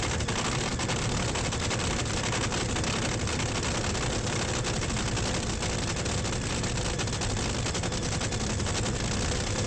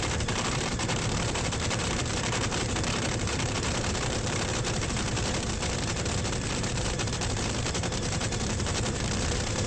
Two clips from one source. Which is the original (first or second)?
first